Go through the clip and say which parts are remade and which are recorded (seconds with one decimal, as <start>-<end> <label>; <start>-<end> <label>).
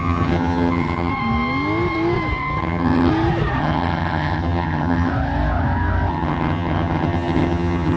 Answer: 0.0-1.1 remade; 1.1-2.6 recorded; 2.6-3.1 remade; 3.1-3.6 recorded; 3.6-5.1 remade; 5.1-6.1 recorded; 6.1-8.0 remade